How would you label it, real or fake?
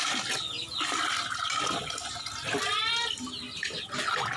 real